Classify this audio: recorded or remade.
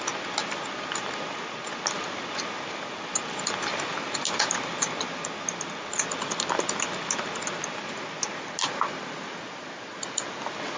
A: recorded